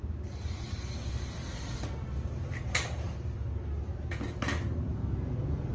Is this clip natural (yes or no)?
yes